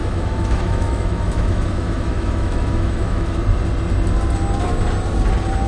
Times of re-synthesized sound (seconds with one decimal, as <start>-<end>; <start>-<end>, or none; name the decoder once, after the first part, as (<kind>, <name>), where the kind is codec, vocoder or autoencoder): 0.0-3.4 (autoencoder, DAC-VAE)